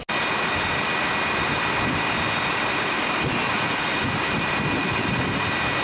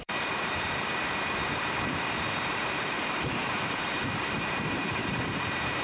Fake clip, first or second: second